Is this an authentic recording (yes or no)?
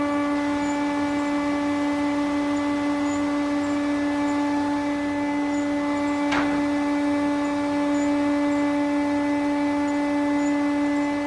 yes